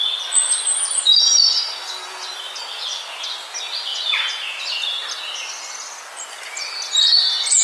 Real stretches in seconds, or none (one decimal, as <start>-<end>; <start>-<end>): 0.0-3.9; 4.6-7.6